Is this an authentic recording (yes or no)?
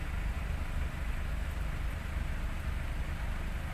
yes